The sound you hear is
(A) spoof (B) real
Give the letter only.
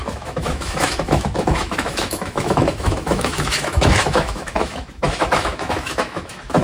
A